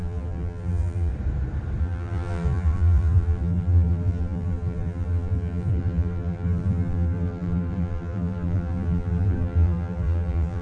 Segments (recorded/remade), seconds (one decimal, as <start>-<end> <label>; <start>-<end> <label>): 0.0-1.1 remade; 1.1-1.8 recorded; 1.8-10.6 remade

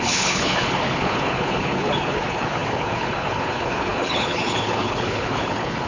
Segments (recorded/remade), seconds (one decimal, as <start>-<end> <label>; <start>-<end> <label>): 0.0-5.9 remade